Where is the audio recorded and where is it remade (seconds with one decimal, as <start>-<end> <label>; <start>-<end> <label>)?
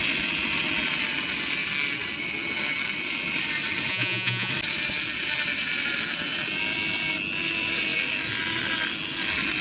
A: 0.0-3.9 recorded; 3.9-4.5 remade; 4.5-9.6 recorded